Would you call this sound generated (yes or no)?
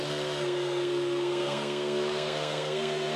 yes